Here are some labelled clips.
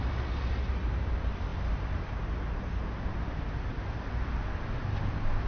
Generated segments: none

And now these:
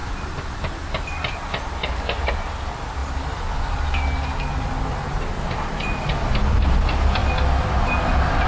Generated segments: none

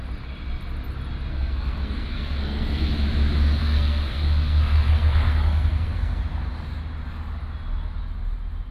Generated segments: 1.3-2.9 (codec, SNAC); 3.6-6.2

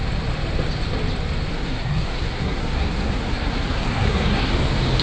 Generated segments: 1.5-4.5 (codec, SNAC)

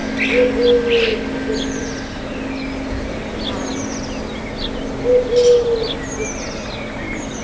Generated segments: none

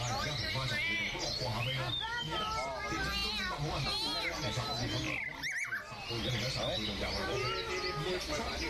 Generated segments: none

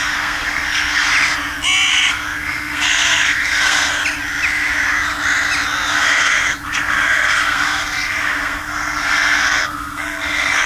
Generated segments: 0.0-1.1 (codec, SNAC); 1.9-4.0; 5.9-10.7

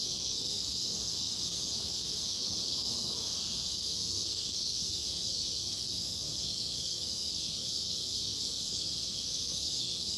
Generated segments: 0.0-10.2 (codec, SNAC)